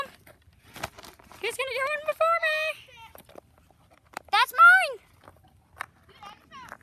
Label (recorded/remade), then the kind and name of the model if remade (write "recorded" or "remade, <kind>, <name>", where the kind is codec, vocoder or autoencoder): recorded